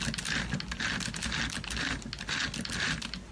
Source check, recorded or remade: recorded